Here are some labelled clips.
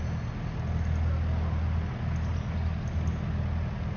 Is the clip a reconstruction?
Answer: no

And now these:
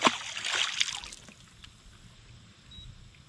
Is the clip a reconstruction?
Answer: no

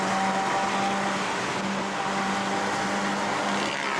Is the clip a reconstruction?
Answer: no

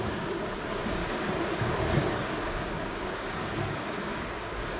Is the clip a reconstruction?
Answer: yes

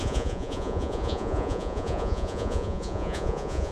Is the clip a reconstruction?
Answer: yes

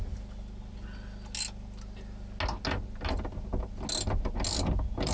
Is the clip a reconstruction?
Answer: no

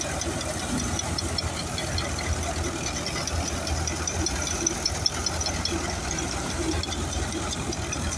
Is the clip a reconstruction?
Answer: no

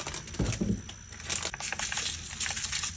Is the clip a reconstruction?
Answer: no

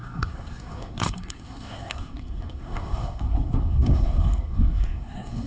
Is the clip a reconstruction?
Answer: yes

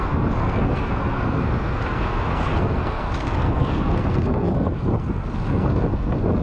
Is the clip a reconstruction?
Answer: yes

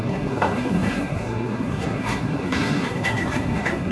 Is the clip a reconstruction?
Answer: yes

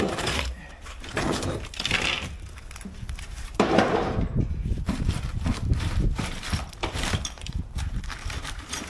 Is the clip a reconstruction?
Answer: yes